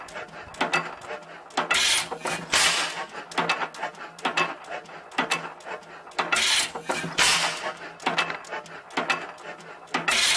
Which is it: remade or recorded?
recorded